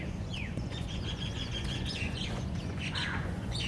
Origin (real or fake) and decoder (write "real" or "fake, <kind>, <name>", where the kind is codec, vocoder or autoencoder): fake, vocoder, Vocos